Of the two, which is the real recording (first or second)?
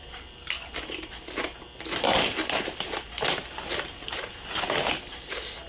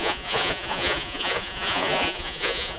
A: first